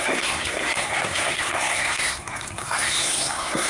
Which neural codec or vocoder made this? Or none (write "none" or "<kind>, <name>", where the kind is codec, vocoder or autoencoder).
codec, SNAC